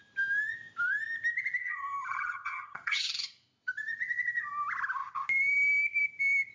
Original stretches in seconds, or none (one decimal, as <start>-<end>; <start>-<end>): 0.0-1.6; 3.0-6.5